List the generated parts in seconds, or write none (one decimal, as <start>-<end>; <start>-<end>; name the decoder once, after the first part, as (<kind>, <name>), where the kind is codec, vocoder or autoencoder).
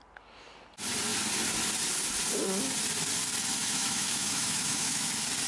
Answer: 3.6-5.1 (autoencoder, DAC-VAE)